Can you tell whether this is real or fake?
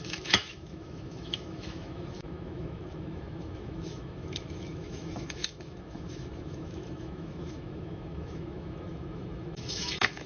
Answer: fake